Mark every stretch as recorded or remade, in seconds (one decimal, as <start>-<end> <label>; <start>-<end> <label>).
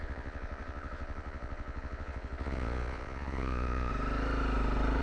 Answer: 0.0-3.9 remade; 3.9-5.0 recorded